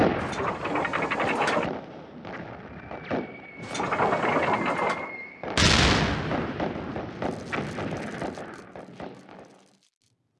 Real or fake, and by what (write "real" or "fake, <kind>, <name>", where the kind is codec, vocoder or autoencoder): real